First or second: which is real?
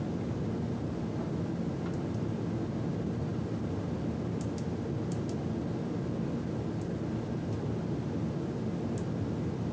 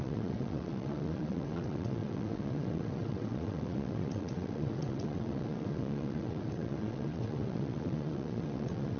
first